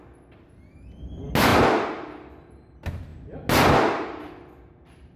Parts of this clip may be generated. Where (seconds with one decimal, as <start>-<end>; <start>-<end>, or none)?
none

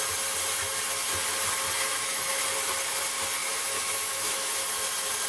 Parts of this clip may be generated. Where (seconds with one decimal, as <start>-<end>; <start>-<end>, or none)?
1.9-2.4; 3.4-4.5

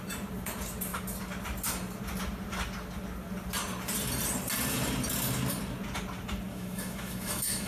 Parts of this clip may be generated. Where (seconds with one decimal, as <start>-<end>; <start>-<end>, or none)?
6.5-7.7

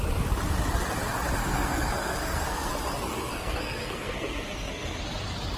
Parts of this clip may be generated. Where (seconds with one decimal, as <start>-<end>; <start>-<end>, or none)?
1.4-2.7; 3.1-5.0

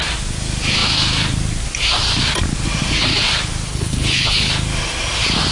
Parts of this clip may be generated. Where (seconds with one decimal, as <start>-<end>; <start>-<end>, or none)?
3.7-4.5

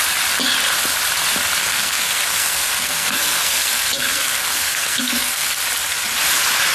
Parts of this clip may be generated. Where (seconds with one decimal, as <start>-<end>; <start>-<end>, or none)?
1.6-5.6